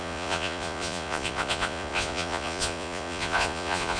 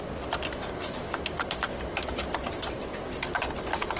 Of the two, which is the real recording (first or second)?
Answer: second